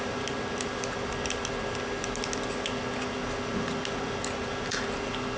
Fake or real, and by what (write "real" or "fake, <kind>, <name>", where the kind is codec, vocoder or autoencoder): real